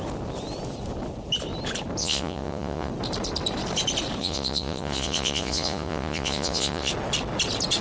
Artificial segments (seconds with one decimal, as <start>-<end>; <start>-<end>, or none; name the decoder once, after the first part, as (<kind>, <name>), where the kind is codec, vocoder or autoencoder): 2.0-2.9 (vocoder, Vocos); 4.2-6.9